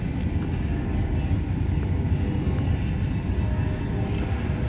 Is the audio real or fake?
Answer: real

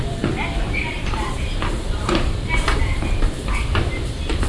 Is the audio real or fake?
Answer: fake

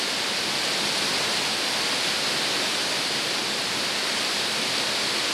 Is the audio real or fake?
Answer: real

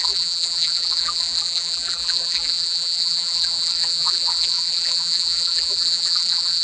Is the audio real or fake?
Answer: fake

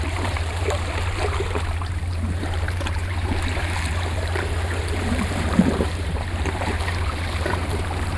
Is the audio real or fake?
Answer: fake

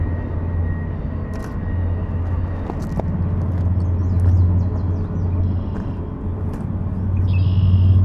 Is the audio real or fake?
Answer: real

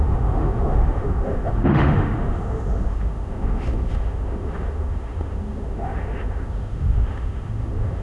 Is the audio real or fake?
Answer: fake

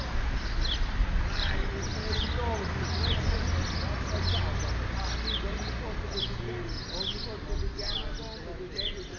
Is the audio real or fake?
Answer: real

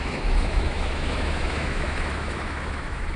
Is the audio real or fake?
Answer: fake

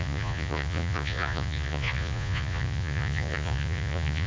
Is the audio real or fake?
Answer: fake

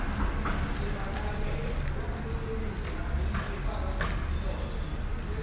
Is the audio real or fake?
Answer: real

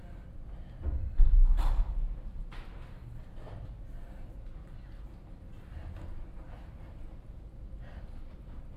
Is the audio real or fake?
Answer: real